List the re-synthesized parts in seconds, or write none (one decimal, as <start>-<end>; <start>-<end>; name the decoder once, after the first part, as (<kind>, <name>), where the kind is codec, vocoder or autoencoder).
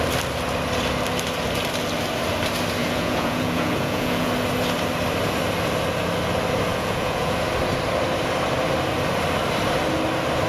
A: 2.8-4.3 (vocoder, Vocos); 6.7-7.4